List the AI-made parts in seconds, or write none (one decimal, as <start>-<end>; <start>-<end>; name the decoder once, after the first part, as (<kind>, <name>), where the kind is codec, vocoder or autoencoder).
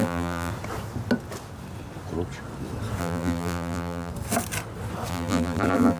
0.0-0.5 (vocoder, BigVGAN v2); 3.0-4.1; 5.1-6.0